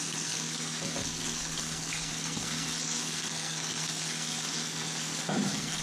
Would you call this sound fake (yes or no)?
yes